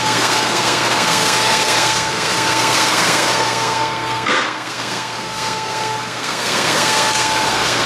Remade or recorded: remade